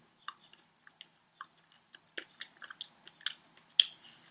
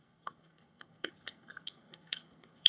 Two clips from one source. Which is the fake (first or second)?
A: second